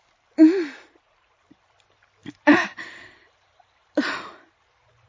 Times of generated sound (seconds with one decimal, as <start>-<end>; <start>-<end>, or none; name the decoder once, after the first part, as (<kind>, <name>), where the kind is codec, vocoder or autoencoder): 2.2-2.8 (vocoder, BigVGAN v2); 3.2-5.1